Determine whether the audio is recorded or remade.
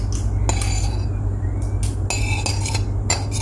recorded